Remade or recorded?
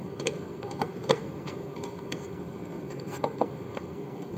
remade